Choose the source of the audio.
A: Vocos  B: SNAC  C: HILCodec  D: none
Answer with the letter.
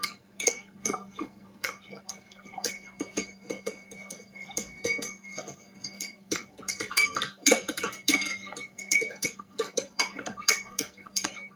B